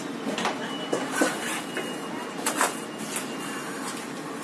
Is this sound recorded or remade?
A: recorded